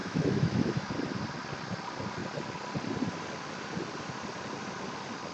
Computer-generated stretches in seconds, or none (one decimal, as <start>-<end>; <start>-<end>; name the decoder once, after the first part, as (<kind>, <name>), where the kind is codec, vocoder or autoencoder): 0.0-0.9 (autoencoder, DAC-VAE)